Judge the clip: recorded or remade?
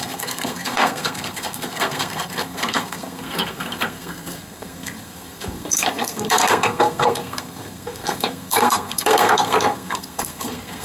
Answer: remade